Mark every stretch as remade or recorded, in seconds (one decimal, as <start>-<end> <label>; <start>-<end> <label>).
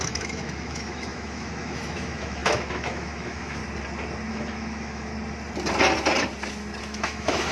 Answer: 0.0-3.6 remade; 3.6-4.3 recorded; 4.3-5.1 remade; 5.1-6.8 recorded; 6.8-7.5 remade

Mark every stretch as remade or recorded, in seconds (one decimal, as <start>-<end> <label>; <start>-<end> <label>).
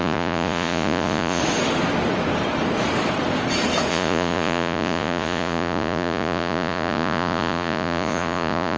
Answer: 0.0-1.4 remade; 1.4-3.9 recorded; 3.9-8.8 remade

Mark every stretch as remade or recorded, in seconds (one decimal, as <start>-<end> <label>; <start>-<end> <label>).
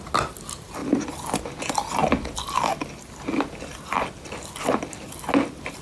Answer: 0.0-5.8 recorded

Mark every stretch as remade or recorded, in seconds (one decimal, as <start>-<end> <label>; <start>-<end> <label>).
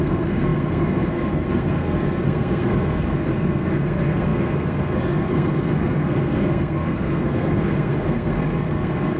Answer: 0.0-9.2 remade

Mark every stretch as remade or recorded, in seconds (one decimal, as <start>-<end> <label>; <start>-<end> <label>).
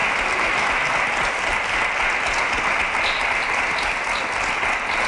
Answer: 0.0-5.1 recorded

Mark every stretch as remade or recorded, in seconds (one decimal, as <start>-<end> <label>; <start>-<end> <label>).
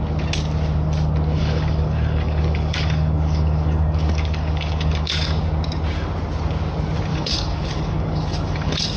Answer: 0.0-1.4 recorded; 1.4-5.4 remade; 5.4-7.1 recorded; 7.1-9.0 remade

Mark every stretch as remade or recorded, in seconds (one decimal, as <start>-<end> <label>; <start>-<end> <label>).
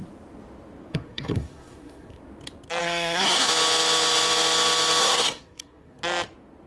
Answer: 0.0-0.9 recorded; 0.9-2.2 remade; 2.2-2.8 recorded; 2.8-3.5 remade; 3.5-5.0 recorded; 5.0-6.0 remade; 6.0-6.7 recorded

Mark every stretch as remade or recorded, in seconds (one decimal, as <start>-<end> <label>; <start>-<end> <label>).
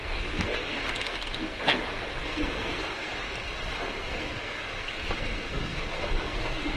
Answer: 0.0-6.8 remade